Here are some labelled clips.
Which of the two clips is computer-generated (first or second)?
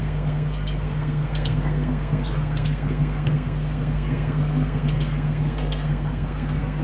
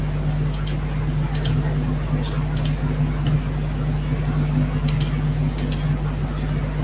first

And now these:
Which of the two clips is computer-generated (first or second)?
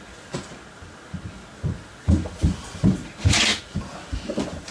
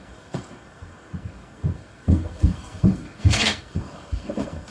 second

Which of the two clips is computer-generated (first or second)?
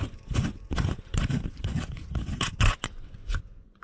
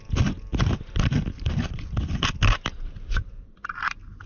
first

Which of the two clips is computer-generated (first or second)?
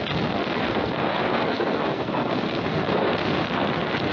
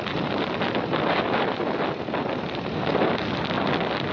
first